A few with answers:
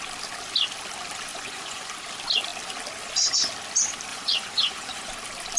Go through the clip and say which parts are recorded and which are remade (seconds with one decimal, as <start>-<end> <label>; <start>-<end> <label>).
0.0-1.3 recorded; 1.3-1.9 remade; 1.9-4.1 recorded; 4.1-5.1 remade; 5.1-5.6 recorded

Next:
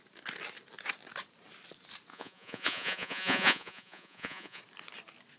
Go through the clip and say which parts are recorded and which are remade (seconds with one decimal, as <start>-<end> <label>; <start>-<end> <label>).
0.0-2.1 recorded; 2.1-4.6 remade; 4.6-5.4 recorded

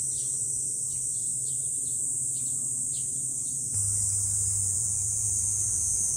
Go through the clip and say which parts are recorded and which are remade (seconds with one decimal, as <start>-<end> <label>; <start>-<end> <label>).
0.0-4.6 recorded; 4.6-6.2 remade